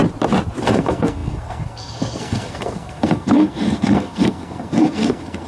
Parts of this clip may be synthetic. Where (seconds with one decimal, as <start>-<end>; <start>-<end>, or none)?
0.6-5.5